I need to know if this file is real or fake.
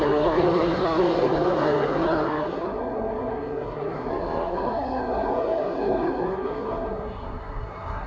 fake